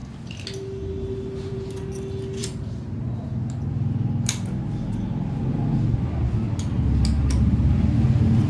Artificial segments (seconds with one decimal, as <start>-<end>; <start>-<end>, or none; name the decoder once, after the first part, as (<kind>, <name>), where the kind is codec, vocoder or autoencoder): 2.4-3.0 (vocoder, BigVGAN v2)